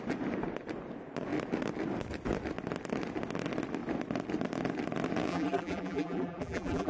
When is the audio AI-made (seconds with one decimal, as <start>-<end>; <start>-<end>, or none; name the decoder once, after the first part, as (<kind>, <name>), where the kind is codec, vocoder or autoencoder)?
5.3-6.9 (vocoder, BigVGAN v2)